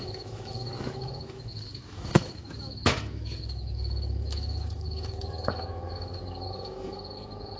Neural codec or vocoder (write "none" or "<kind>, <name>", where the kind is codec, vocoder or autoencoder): autoencoder, DAC-VAE